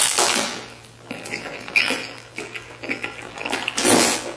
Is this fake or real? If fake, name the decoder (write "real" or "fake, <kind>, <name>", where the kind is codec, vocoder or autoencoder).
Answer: fake, vocoder, BigVGAN v2